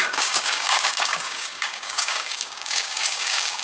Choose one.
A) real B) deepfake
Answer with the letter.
B